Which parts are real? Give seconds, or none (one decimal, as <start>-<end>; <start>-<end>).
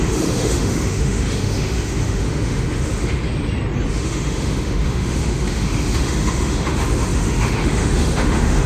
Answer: 3.2-3.9